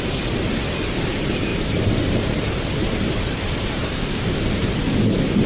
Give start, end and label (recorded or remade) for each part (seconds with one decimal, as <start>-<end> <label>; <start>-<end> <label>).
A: 0.0-1.5 recorded; 1.5-4.8 remade; 4.8-5.5 recorded